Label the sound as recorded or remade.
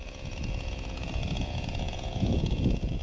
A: remade